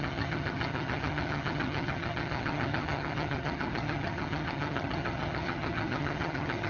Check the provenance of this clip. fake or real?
fake